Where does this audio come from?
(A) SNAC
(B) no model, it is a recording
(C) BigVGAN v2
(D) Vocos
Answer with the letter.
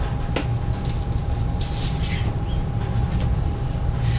B